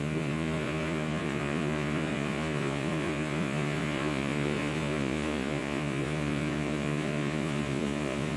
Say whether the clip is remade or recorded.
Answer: remade